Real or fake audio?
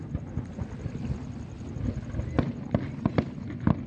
real